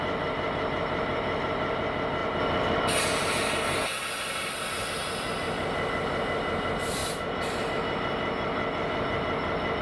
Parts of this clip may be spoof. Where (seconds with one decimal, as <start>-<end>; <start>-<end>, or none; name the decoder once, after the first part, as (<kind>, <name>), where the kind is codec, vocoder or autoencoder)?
0.0-1.8 (vocoder, BigVGAN v2); 2.2-3.3